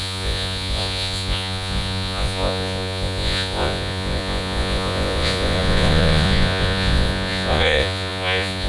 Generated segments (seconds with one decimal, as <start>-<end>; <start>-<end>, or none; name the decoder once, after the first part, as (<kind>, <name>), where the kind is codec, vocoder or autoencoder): 0.0-8.7 (vocoder, Vocos)